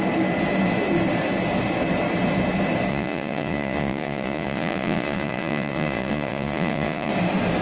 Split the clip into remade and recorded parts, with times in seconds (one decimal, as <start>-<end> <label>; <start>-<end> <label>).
0.0-2.9 recorded; 2.9-7.1 remade; 7.1-7.6 recorded